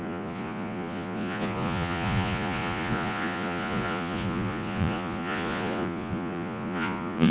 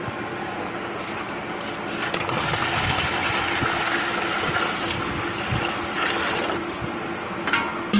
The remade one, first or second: first